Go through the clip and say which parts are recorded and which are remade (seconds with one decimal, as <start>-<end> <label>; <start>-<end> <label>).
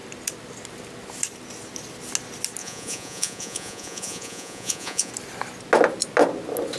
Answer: 0.0-2.6 recorded; 2.6-5.1 remade; 5.1-6.8 recorded